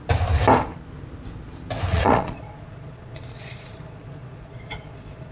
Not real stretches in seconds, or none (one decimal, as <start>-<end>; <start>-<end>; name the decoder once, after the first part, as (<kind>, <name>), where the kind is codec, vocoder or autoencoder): 1.9-5.3 (vocoder, Vocos)